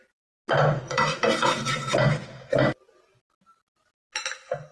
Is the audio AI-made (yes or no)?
no